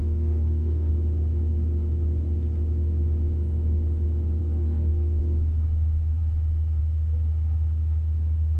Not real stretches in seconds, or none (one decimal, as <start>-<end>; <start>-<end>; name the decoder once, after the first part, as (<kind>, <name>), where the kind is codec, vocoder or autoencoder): 0.0-0.9 (codec, SNAC); 4.4-5.2